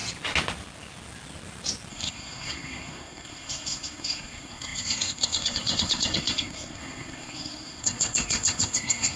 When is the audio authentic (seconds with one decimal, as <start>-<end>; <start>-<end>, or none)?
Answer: 0.0-1.9